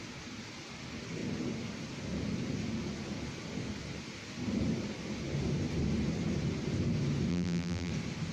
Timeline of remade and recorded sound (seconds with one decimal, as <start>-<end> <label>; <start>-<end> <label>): 0.0-7.3 recorded; 7.3-7.9 remade; 7.9-8.3 recorded